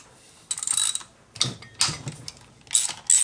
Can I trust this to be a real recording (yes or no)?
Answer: yes